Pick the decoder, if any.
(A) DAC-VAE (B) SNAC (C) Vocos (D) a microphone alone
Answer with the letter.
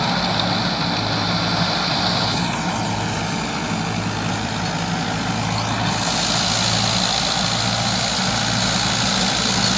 D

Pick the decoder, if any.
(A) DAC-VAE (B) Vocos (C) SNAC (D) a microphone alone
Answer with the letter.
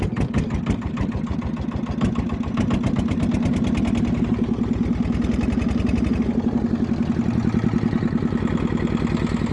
D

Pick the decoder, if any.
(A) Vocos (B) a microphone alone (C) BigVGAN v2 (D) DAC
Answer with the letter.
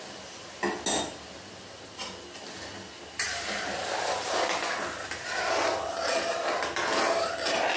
B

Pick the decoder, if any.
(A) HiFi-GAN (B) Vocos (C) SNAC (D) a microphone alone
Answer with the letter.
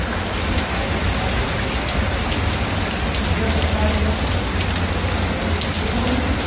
D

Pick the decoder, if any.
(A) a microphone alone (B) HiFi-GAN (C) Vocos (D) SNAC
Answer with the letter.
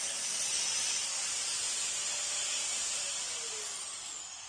A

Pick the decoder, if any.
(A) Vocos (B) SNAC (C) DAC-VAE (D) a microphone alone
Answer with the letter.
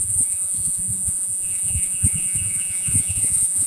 A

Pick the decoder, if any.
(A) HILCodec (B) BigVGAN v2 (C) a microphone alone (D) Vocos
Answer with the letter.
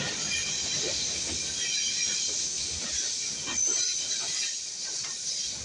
C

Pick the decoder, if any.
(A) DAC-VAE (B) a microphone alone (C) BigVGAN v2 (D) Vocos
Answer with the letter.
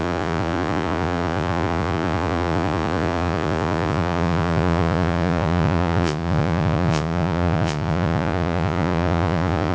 D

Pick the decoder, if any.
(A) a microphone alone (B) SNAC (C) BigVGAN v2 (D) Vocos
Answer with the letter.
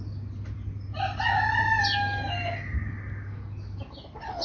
A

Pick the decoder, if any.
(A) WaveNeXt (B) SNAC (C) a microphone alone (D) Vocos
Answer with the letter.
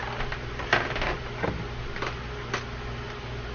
C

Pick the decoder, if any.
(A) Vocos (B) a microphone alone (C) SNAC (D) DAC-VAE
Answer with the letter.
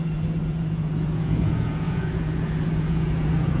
A